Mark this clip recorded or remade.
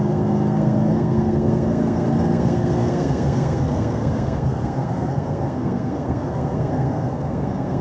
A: remade